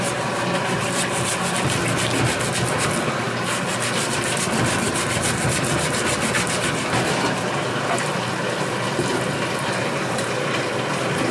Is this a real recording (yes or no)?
yes